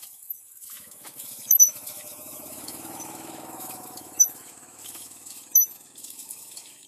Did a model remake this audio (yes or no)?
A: yes